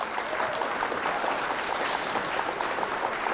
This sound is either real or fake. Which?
real